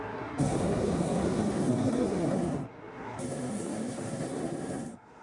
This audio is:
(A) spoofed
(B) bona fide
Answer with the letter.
A